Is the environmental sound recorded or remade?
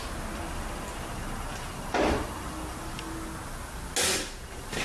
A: recorded